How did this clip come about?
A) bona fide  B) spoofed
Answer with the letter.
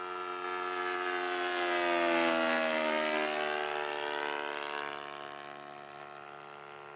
A